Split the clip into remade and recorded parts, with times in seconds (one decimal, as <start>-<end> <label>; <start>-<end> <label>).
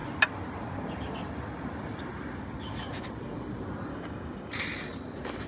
0.0-3.9 recorded; 3.9-4.5 remade; 4.5-5.5 recorded